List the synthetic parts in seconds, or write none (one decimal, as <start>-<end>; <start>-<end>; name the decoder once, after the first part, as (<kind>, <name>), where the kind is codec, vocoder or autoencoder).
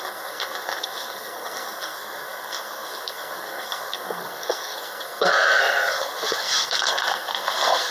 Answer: 0.0-7.9 (codec, SNAC)